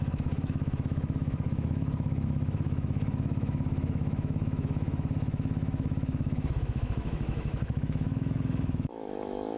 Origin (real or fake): fake